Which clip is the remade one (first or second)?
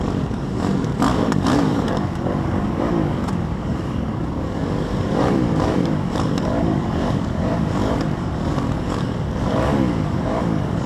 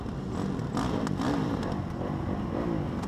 first